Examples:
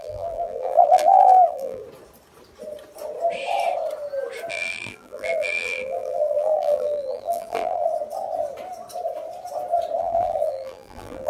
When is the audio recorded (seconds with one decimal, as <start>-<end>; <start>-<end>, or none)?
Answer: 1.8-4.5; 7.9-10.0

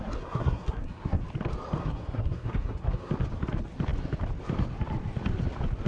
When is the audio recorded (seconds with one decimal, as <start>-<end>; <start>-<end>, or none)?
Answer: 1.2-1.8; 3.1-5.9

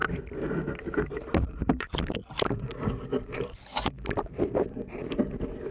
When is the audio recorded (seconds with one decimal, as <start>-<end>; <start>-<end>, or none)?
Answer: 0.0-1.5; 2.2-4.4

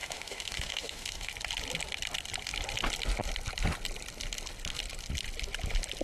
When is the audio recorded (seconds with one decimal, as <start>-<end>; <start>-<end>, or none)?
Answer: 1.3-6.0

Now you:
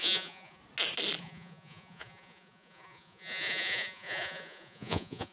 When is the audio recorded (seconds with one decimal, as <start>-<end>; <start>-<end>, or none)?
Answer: 0.6-1.2

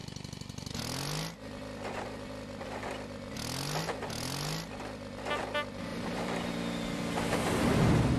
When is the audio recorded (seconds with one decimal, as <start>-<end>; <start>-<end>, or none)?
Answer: 0.0-5.9; 7.0-8.2